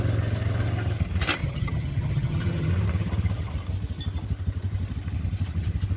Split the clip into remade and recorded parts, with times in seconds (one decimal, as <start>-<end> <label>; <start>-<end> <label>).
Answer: 0.0-1.4 recorded; 1.4-2.7 remade; 2.7-6.0 recorded